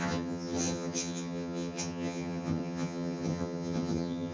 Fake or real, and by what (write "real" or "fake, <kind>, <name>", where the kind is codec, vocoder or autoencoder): fake, vocoder, HiFi-GAN